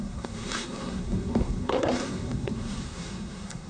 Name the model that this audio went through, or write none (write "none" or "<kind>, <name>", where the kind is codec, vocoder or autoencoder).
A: codec, SNAC